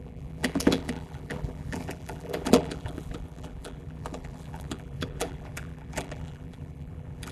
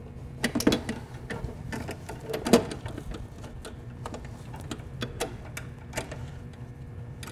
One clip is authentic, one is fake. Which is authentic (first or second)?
second